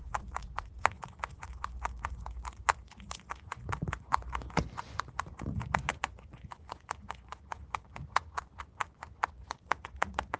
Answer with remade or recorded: remade